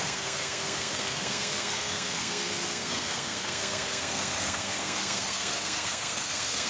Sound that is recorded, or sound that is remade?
remade